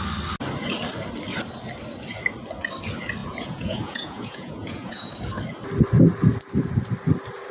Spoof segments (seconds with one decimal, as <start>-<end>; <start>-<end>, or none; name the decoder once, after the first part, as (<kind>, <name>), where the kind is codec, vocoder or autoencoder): 3.2-5.1 (vocoder, Vocos)